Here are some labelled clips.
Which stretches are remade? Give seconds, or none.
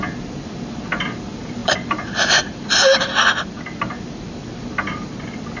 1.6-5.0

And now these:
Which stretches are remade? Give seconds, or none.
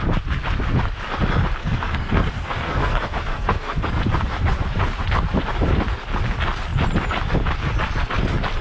1.6-4.0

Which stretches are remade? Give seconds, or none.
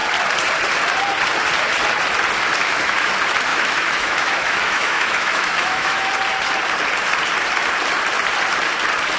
2.6-3.1; 3.5-6.1